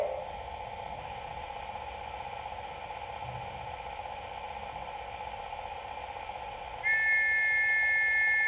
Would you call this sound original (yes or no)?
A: yes